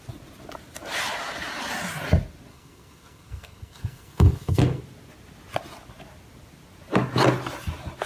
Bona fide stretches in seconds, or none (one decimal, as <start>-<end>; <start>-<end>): 0.0-2.5; 4.8-8.1